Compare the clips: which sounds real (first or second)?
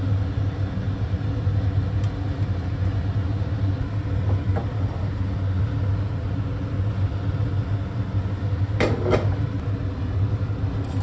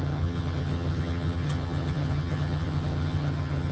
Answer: first